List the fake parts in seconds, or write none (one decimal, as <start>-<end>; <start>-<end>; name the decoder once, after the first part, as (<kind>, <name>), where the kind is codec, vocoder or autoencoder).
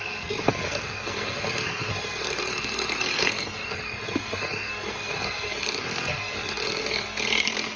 0.0-7.8 (codec, SNAC)